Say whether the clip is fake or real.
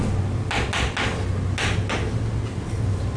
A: real